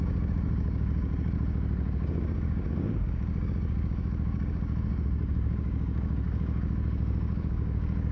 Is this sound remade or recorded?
remade